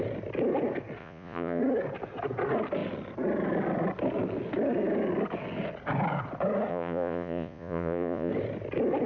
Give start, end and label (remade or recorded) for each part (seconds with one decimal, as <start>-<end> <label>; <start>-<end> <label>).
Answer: 0.0-1.0 recorded; 1.0-1.6 remade; 1.6-6.7 recorded; 6.7-8.3 remade; 8.3-9.1 recorded